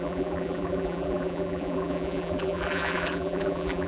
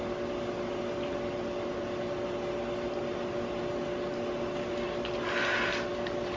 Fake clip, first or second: first